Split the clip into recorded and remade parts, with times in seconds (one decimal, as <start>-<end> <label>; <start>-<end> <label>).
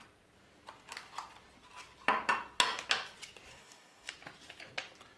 0.0-3.5 recorded; 3.5-4.1 remade; 4.1-5.2 recorded